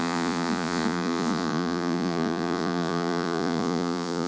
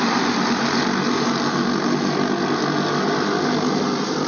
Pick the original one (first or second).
second